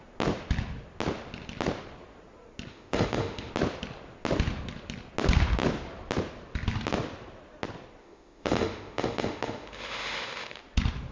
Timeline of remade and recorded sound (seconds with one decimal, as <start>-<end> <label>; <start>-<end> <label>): 0.0-2.7 recorded; 2.7-3.5 remade; 3.5-8.0 recorded; 8.0-10.6 remade; 10.6-11.1 recorded